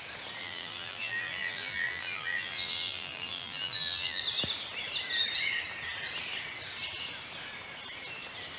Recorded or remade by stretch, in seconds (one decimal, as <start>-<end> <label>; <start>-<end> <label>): 0.0-0.4 recorded; 0.4-4.2 remade; 4.2-8.6 recorded